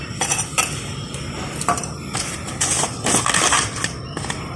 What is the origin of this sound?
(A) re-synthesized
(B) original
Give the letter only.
B